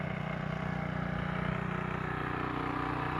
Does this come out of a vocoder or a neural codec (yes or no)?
no